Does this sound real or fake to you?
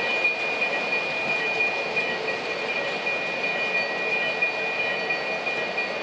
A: real